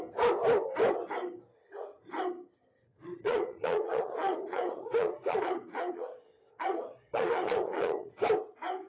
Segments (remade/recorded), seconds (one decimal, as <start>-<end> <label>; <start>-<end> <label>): 0.0-2.9 recorded; 2.9-8.1 remade; 8.1-8.9 recorded